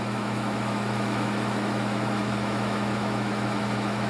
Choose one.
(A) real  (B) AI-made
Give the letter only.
B